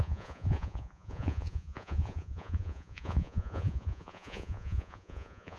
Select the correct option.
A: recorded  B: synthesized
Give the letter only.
B